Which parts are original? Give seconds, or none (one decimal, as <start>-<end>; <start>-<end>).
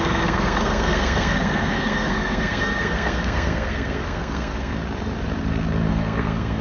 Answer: 4.7-5.9